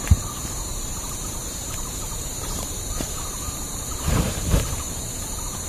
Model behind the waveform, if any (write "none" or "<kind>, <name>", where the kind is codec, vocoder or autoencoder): vocoder, BigVGAN v2